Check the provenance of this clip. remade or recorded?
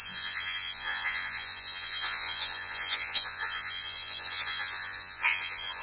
remade